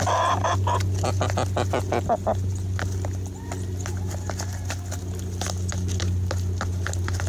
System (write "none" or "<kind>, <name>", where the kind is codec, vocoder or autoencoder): none